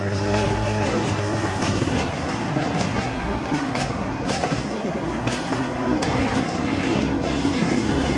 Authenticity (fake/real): fake